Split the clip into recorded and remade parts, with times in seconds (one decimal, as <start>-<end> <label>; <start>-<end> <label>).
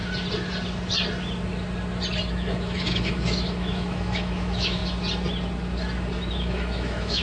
0.0-2.3 recorded; 2.3-4.8 remade; 4.8-6.3 recorded; 6.3-7.2 remade